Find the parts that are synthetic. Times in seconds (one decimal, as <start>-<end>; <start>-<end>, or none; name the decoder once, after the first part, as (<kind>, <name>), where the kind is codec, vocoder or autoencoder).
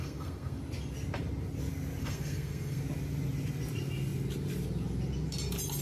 0.0-0.6 (codec, SNAC); 2.0-2.8